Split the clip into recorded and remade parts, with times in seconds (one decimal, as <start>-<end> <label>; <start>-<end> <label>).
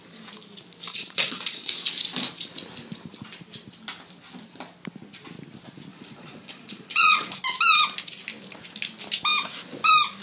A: 0.0-0.9 recorded; 0.9-1.7 remade; 1.7-5.9 recorded; 5.9-7.4 remade; 7.4-10.2 recorded